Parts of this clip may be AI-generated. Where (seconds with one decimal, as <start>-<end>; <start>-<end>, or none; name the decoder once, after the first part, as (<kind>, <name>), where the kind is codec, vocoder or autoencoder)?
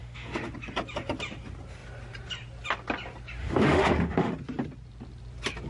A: 0.0-0.5 (autoencoder, DAC-VAE); 3.4-4.3